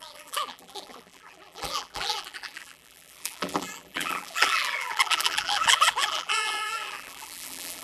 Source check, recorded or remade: remade